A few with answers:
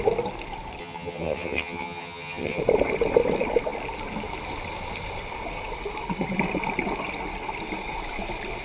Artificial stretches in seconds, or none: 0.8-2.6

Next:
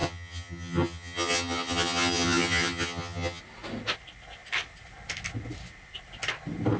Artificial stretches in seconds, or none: 0.0-3.4

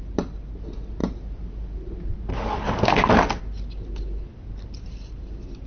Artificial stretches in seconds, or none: none